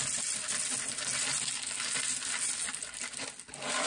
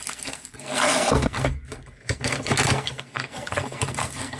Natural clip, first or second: first